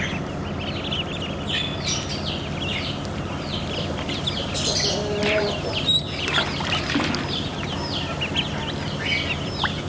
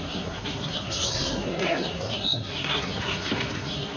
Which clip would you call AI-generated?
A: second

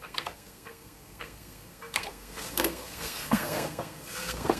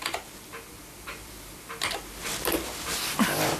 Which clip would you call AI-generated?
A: first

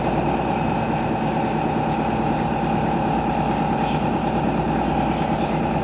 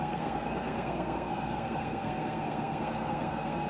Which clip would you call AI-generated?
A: second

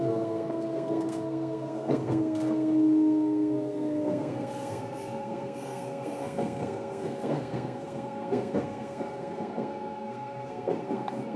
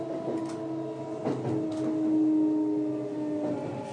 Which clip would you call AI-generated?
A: first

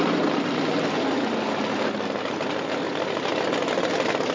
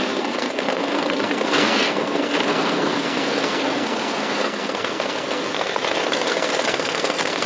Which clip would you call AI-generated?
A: second